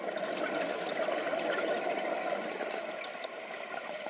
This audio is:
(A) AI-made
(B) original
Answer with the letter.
B